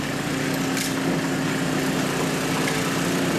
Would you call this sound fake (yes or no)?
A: no